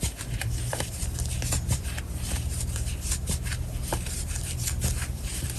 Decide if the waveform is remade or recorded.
remade